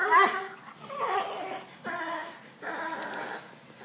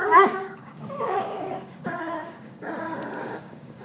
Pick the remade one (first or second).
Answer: second